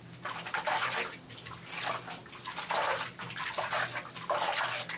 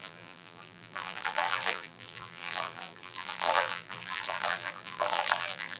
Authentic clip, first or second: first